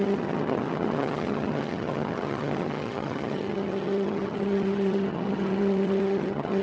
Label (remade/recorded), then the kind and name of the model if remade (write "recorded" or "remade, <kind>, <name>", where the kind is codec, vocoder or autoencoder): remade, vocoder, HiFi-GAN